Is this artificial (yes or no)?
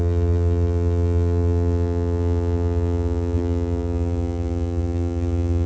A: yes